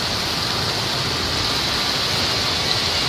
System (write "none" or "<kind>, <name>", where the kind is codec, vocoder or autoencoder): none